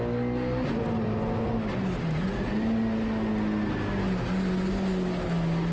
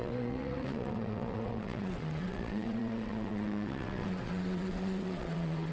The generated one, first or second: second